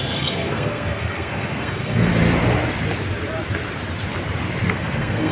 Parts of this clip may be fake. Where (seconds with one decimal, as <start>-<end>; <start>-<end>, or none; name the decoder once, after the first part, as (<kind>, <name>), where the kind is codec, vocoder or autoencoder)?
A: 0.0-2.1 (codec, SNAC); 4.7-5.3